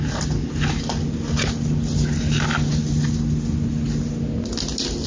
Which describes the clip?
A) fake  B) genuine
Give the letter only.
B